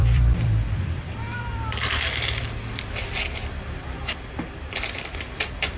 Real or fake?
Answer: fake